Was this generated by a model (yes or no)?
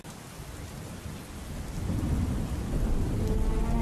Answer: no